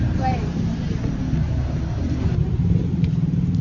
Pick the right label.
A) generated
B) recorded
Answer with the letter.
A